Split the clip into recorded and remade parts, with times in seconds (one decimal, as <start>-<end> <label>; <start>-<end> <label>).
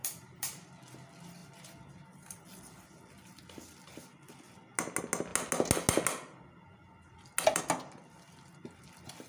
0.0-0.7 remade; 0.7-9.3 recorded